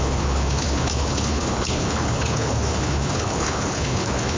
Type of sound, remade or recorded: remade